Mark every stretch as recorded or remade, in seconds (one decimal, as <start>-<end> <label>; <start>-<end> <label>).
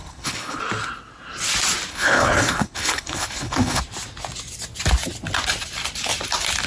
0.0-0.6 remade; 0.6-1.9 recorded; 1.9-3.8 remade; 3.8-6.7 recorded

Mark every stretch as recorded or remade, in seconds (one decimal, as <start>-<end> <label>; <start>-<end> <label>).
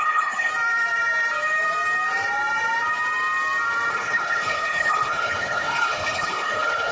0.0-0.5 remade; 0.5-3.9 recorded; 3.9-6.9 remade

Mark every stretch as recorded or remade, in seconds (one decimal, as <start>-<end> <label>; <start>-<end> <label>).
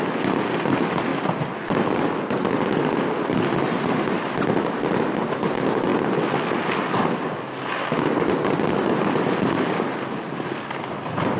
0.0-11.4 recorded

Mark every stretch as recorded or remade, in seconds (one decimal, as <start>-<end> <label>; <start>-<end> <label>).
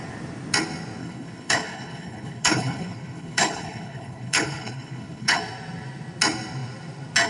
0.0-1.0 recorded; 1.0-5.4 remade; 5.4-7.3 recorded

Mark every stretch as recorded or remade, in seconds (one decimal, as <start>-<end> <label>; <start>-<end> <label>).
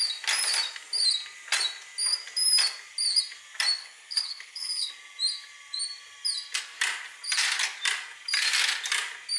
0.0-3.8 recorded; 3.8-4.9 remade; 4.9-9.4 recorded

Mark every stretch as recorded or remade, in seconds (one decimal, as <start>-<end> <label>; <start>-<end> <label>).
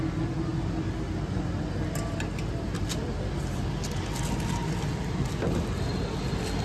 0.0-6.6 recorded